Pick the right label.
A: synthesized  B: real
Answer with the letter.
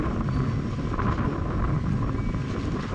B